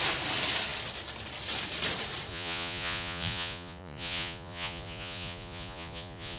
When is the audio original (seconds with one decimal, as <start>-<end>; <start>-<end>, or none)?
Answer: 0.0-2.3

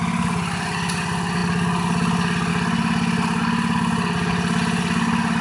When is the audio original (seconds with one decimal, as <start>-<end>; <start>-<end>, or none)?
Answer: 0.0-5.4

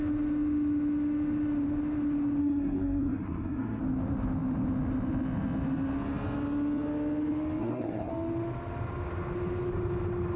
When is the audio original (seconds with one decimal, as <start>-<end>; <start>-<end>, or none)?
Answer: 0.0-2.4; 3.8-7.6; 8.1-10.4

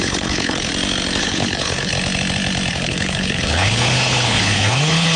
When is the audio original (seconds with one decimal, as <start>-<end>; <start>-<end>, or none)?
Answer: 0.7-1.2; 1.9-2.7

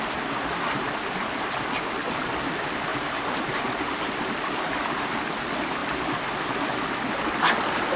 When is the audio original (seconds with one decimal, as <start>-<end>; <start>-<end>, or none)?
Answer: 0.0-8.0

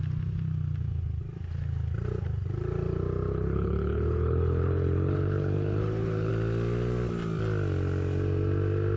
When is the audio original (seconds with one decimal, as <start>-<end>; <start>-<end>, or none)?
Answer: 0.0-3.3; 6.3-9.0

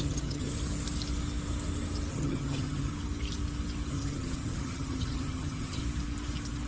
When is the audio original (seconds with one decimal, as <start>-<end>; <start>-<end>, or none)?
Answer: 0.5-2.1; 2.9-3.9; 5.8-6.7

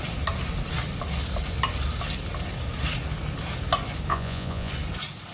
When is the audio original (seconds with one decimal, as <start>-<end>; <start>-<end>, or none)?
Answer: 0.0-4.1; 4.7-5.3